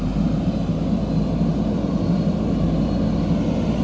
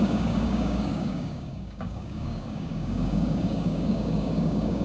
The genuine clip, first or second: first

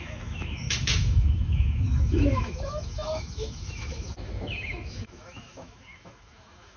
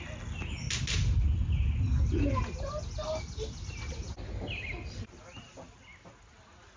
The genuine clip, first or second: second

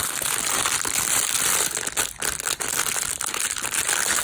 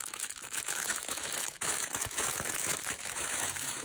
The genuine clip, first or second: first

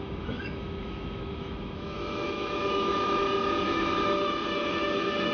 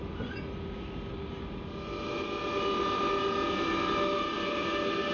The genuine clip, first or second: second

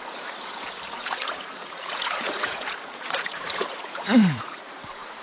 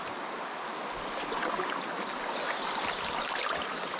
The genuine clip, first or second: second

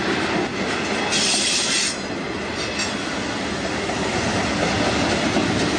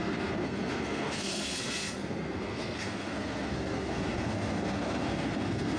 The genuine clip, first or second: first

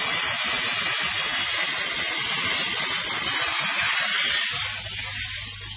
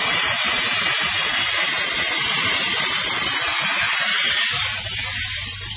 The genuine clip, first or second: first